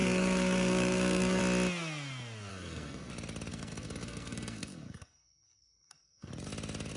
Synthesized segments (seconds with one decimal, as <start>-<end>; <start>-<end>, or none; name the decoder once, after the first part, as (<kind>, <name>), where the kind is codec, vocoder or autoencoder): 0.0-1.4 (codec, SNAC); 2.5-3.1; 3.5-6.3